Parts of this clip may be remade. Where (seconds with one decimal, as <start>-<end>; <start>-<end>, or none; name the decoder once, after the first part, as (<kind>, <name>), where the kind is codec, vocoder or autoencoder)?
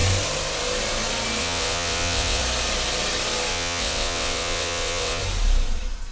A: 1.4-2.4 (vocoder, WaveNeXt); 3.5-5.2